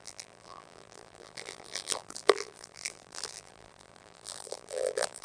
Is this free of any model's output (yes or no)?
no